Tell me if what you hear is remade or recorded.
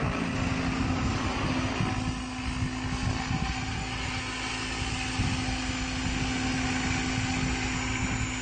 recorded